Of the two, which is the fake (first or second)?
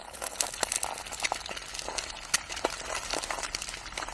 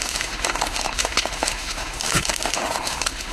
second